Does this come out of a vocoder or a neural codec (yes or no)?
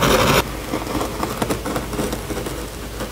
no